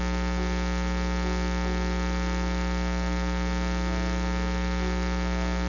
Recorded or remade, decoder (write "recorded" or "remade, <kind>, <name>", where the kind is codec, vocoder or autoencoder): recorded